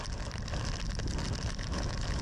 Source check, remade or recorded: recorded